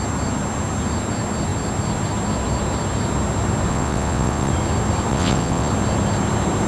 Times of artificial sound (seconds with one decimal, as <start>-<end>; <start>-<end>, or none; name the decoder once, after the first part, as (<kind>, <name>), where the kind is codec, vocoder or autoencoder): 3.7-4.5 (vocoder, WaveNeXt); 5.1-5.7